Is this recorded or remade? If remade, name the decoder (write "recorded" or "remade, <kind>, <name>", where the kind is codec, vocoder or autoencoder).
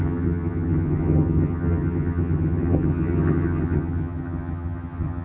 remade, vocoder, HiFi-GAN